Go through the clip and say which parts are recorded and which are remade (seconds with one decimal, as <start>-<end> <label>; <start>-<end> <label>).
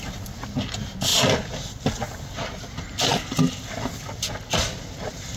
0.0-5.4 recorded